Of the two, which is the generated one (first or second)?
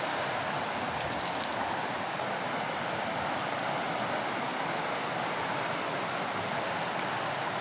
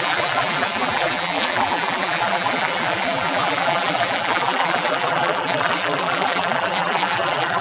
second